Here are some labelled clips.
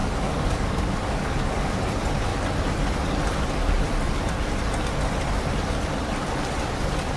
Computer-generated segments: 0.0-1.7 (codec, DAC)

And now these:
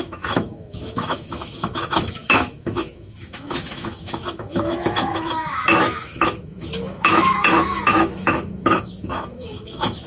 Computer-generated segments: 0.0-10.1 (autoencoder, DAC-VAE)

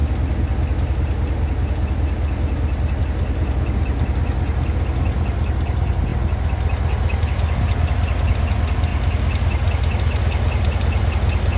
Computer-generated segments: none

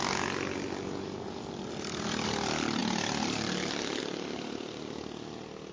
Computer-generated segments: none

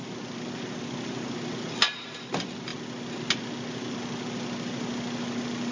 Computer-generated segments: none

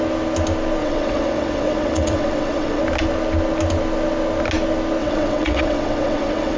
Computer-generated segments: 0.8-2.8 (vocoder, WaveNeXt); 5.0-6.6